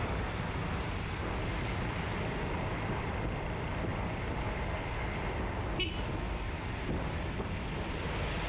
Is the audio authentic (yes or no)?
yes